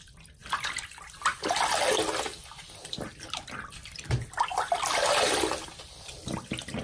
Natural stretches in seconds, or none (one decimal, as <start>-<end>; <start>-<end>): 0.0-6.8